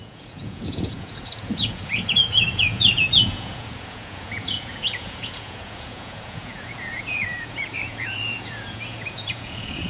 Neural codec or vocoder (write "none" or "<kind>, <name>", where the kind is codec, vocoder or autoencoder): vocoder, Vocos